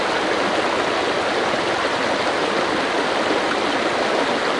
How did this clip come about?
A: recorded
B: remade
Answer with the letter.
A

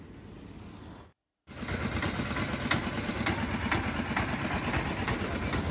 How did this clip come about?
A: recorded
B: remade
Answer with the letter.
A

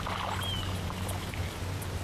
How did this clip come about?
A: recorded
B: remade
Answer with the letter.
A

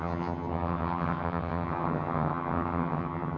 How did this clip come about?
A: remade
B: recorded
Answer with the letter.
A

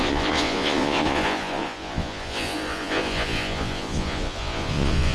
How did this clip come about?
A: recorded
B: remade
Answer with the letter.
B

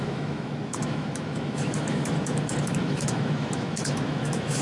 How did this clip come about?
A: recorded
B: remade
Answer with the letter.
B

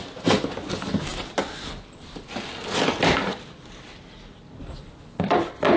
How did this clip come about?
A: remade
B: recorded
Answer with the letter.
B